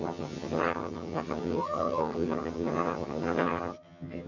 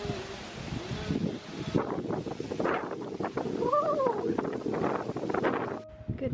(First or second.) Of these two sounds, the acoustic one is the second